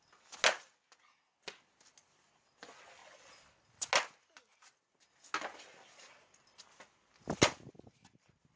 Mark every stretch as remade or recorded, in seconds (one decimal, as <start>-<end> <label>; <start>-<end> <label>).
0.0-8.6 recorded